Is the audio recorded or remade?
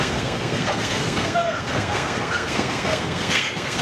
remade